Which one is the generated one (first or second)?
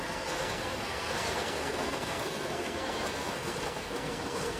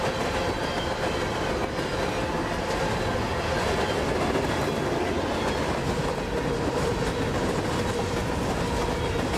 first